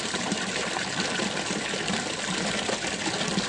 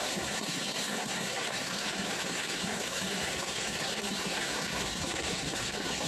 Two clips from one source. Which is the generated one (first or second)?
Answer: second